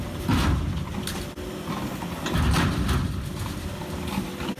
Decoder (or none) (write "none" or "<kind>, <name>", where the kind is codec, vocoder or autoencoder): none